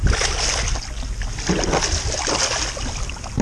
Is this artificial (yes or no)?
no